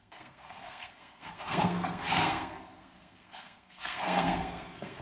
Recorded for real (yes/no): no